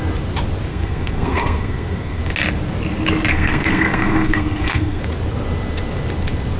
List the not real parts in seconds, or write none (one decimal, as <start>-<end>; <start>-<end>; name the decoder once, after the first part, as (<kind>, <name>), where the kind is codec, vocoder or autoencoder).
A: 0.7-2.2 (codec, SNAC); 3.3-5.0